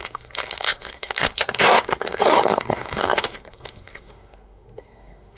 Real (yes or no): no